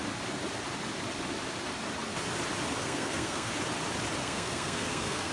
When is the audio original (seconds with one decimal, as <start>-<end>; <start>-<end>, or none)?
0.0-2.8; 3.5-4.2